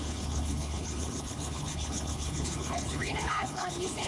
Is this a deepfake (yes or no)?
yes